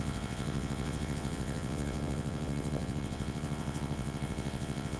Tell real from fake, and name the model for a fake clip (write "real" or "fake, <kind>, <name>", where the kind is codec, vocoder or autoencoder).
fake, vocoder, WaveNeXt